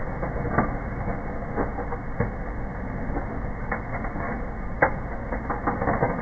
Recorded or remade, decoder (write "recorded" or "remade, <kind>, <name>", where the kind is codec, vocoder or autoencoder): recorded